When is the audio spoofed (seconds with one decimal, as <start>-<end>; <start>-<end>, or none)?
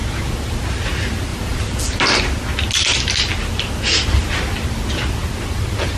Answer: none